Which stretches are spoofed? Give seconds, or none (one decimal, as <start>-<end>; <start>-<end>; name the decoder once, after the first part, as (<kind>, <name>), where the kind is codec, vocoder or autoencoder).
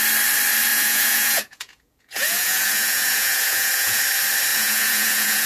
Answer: 0.7-4.0 (vocoder, Vocos); 4.5-5.5